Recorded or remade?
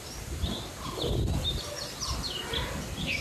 recorded